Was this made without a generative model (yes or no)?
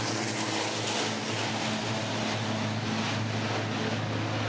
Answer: yes